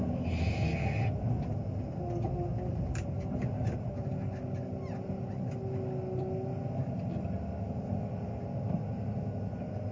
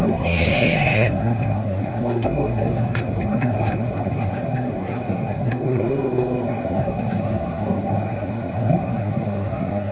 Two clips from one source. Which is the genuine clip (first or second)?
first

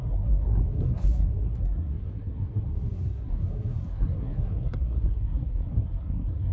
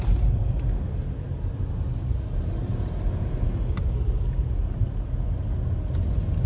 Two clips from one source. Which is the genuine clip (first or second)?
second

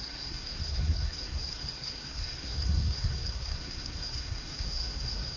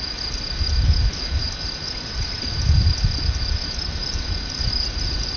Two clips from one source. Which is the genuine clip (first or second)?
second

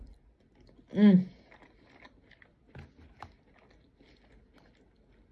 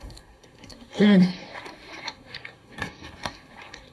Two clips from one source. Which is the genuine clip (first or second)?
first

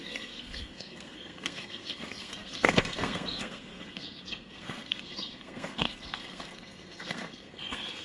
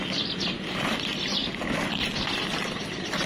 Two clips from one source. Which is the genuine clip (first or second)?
second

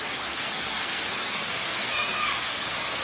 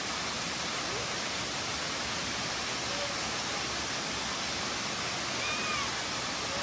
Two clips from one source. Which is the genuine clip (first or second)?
second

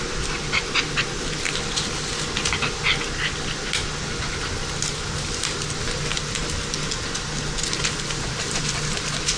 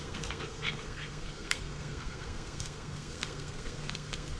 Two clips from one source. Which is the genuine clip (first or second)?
first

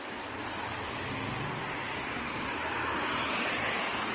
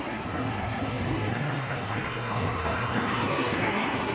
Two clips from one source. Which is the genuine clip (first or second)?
first